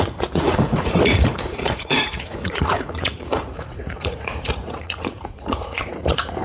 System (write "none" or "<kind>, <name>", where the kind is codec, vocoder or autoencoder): vocoder, Vocos